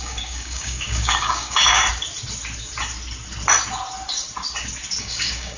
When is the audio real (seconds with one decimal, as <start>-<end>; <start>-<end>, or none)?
1.8-5.0